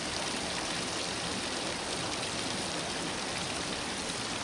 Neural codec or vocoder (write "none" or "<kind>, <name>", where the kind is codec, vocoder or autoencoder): none